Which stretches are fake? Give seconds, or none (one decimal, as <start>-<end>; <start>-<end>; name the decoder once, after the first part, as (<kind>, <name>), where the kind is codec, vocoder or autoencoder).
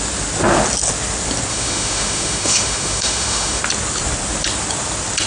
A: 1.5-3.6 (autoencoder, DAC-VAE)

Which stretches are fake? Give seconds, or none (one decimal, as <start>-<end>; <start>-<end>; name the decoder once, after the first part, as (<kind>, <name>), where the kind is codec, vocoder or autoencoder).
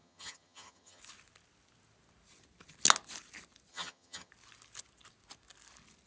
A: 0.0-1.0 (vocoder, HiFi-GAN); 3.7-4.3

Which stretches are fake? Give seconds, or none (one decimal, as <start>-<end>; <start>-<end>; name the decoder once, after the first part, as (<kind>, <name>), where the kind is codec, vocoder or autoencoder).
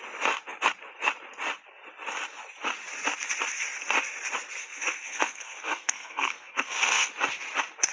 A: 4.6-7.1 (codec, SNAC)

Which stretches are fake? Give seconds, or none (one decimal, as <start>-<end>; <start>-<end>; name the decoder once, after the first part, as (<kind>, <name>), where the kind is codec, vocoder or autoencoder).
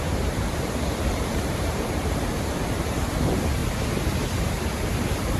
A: 0.0-3.6 (vocoder, BigVGAN v2); 4.5-5.4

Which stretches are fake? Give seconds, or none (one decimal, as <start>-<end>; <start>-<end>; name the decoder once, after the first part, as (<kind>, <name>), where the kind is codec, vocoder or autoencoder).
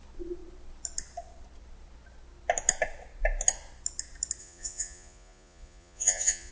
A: 4.4-6.5 (vocoder, Vocos)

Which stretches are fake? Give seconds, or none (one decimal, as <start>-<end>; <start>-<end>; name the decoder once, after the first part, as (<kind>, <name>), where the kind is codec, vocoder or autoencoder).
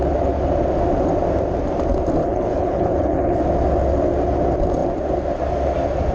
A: 2.2-3.4 (codec, HILCodec)